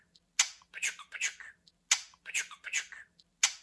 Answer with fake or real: real